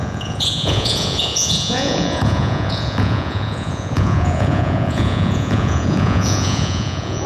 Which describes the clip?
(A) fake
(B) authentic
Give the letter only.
A